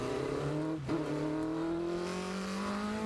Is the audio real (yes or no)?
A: yes